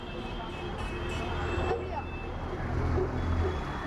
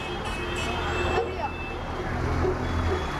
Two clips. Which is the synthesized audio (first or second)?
first